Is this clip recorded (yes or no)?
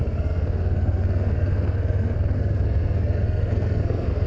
no